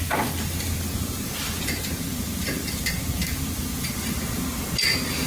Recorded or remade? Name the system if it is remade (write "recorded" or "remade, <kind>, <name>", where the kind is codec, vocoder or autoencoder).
recorded